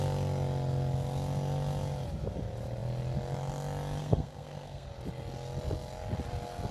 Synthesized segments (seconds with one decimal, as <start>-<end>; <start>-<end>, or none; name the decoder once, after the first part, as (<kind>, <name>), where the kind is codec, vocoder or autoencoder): 4.0-4.9 (codec, SNAC)